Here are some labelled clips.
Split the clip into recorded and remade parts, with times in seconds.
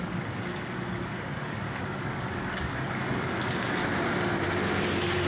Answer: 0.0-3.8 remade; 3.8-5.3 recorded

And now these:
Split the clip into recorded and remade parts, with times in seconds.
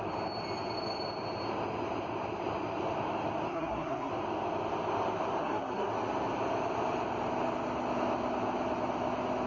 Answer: 0.0-3.5 recorded; 3.5-4.1 remade; 4.1-5.4 recorded; 5.4-5.9 remade; 5.9-9.5 recorded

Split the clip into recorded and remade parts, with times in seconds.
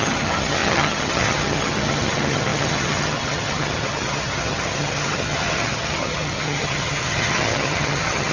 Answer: 0.0-8.3 remade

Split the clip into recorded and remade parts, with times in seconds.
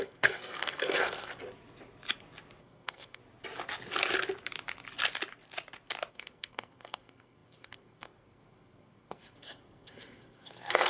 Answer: 0.0-1.3 remade; 1.3-2.6 recorded; 2.6-3.2 remade; 3.2-6.1 recorded; 6.1-10.9 remade